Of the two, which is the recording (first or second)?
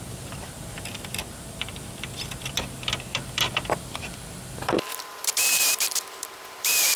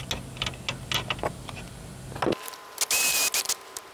second